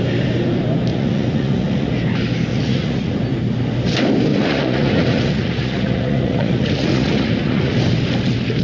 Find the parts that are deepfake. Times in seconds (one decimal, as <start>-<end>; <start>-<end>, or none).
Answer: 0.9-1.9; 2.5-3.2; 4.3-7.8